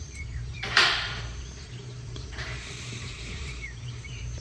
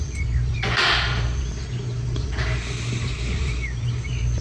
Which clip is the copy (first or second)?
first